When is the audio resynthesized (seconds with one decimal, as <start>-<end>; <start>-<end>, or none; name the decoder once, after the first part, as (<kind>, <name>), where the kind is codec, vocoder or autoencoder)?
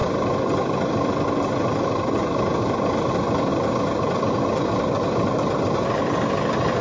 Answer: none